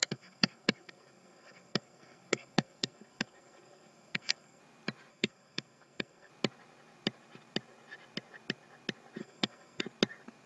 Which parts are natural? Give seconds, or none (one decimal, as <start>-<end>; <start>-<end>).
4.6-5.1; 6.3-9.2; 9.8-10.5